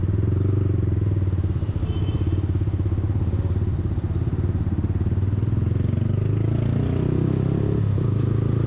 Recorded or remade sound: recorded